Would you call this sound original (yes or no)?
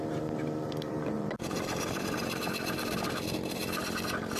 no